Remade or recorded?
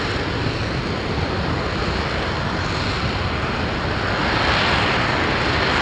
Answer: recorded